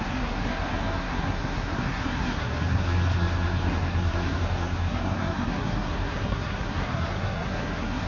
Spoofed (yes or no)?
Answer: yes